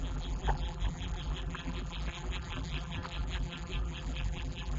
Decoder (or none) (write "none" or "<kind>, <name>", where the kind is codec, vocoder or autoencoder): vocoder, BigVGAN v2